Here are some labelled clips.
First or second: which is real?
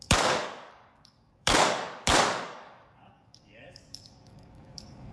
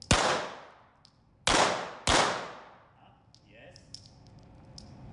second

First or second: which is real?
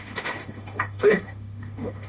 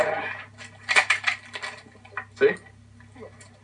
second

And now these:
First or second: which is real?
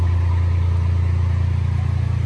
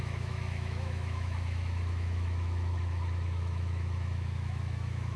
first